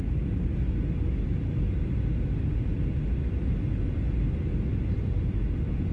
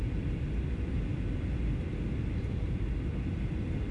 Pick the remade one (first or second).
second